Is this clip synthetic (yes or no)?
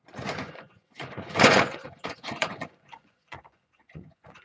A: yes